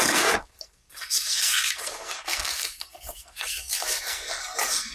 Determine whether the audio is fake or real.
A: fake